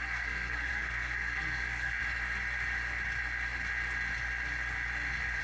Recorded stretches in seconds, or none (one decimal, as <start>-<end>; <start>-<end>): 2.0-5.4